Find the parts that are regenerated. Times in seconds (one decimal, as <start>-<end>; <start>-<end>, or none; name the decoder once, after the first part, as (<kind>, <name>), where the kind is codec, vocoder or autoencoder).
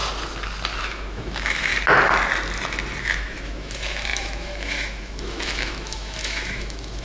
0.8-1.7 (autoencoder, DAC-VAE); 3.0-7.0